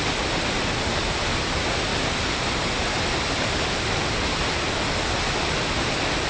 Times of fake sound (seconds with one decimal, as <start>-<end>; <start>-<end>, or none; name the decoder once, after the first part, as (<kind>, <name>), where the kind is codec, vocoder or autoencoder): none